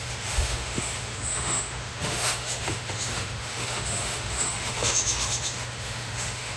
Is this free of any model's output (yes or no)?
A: no